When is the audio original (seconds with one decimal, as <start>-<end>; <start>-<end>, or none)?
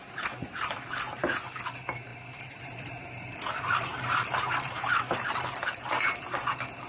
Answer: 0.0-2.1; 5.0-6.9